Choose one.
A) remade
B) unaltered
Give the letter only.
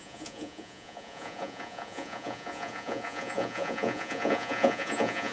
A